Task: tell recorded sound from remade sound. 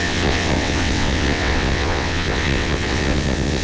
remade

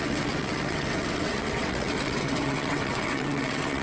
remade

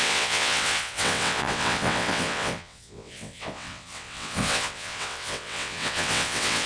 remade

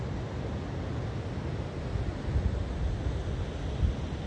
recorded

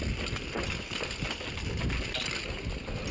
recorded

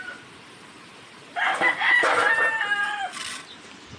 recorded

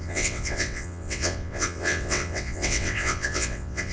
remade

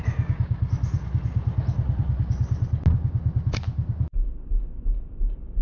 recorded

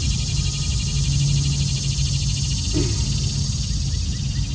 recorded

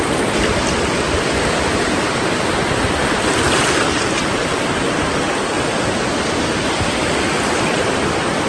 recorded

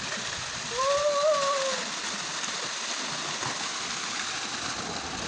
recorded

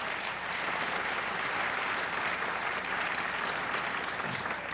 recorded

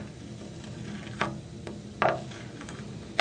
recorded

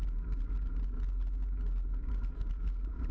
recorded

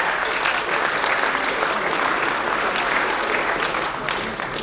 recorded